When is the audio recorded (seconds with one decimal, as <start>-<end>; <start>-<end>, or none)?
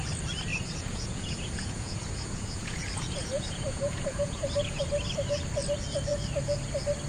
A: 0.0-0.5; 4.8-7.1